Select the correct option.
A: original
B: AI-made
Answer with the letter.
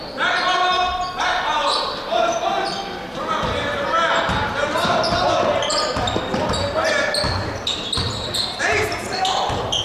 A